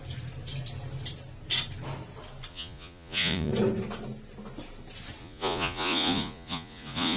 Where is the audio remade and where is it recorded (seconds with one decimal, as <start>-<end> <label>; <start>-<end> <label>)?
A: 0.0-2.5 recorded; 2.5-3.5 remade; 3.5-5.2 recorded; 5.2-7.2 remade